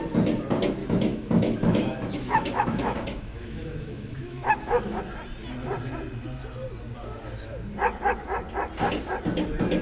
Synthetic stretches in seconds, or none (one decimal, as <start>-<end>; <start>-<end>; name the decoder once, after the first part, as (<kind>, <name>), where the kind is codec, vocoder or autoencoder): 0.8-5.0 (autoencoder, DAC-VAE)